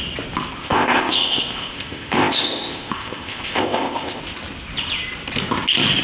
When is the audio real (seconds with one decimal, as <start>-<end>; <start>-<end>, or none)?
0.0-0.6; 4.2-6.0

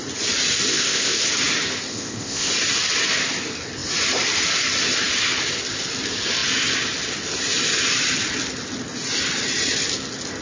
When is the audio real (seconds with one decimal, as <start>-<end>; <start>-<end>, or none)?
0.0-0.7; 1.2-1.9; 2.5-10.4

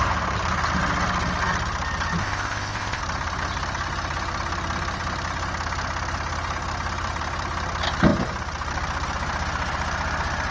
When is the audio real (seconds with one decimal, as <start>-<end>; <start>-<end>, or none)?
0.0-2.2; 3.0-10.5

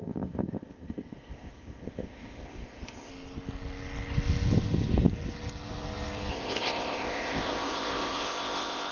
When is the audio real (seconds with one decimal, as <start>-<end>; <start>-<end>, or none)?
3.1-6.3

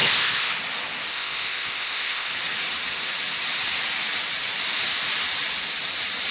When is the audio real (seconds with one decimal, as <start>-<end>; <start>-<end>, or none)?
0.5-1.1; 2.3-6.3

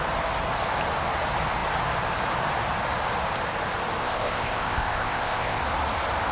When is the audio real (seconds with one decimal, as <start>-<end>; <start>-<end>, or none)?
0.0-4.0; 5.6-6.3

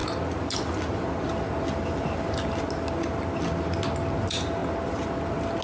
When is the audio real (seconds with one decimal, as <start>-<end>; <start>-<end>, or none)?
0.0-5.6